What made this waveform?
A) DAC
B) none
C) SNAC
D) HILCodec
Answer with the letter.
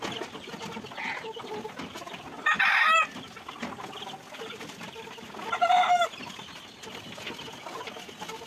B